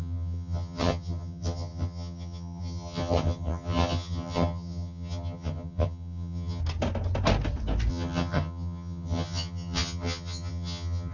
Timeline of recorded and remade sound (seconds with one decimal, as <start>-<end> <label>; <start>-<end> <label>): 0.0-6.6 remade; 6.6-7.9 recorded; 7.9-11.1 remade